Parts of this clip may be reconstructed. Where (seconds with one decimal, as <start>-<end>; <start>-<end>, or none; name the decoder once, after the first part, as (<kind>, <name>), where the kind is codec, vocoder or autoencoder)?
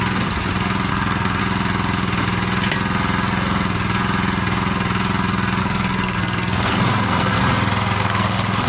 0.9-1.4 (codec, SNAC); 5.6-7.4; 8.0-8.7